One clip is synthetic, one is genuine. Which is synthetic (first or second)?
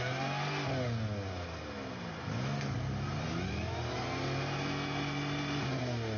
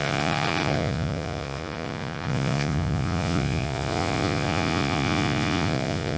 second